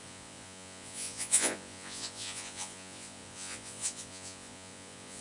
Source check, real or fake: fake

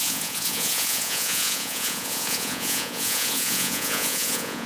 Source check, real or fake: fake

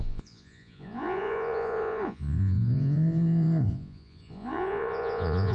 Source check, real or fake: fake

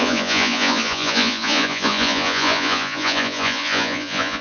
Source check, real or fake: fake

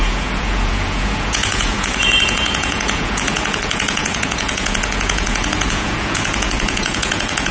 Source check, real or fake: fake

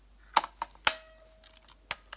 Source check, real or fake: real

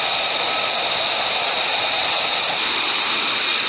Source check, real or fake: real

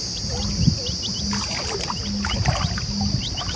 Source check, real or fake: real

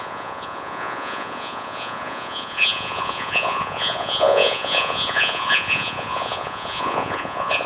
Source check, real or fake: fake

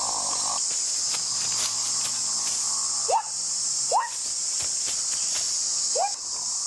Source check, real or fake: real